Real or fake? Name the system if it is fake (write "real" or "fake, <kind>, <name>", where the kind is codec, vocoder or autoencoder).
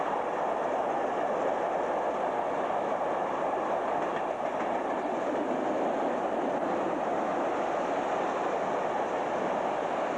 real